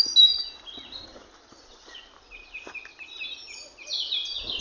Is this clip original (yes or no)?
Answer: yes